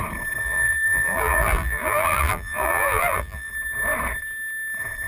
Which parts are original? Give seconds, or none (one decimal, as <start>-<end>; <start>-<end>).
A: 0.0-0.4; 3.5-5.1